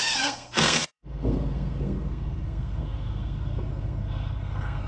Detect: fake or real fake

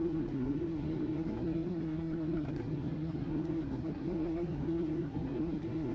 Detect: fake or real fake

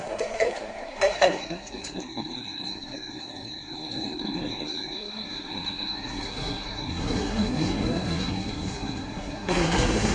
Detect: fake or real fake